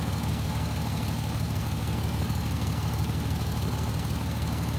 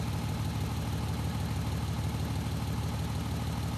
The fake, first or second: first